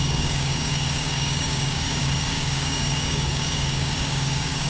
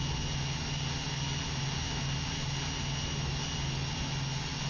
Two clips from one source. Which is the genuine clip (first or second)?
second